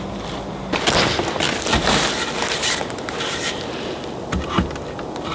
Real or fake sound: real